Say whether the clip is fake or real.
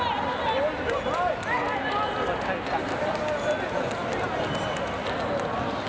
real